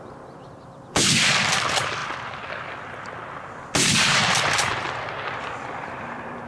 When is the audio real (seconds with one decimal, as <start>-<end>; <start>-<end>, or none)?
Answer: none